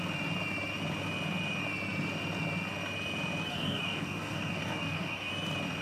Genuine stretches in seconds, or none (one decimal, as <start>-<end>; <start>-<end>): 0.0-3.5; 5.3-5.8